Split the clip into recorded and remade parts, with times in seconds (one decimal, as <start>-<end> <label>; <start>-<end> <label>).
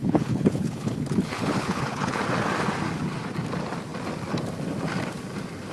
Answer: 0.0-2.2 remade; 2.2-5.7 recorded